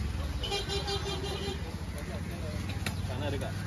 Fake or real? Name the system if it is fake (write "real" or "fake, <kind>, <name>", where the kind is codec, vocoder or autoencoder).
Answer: real